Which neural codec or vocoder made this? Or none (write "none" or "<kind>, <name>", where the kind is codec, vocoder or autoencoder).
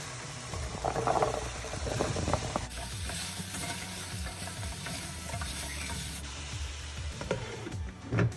vocoder, BigVGAN v2